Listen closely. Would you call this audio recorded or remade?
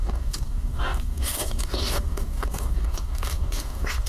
remade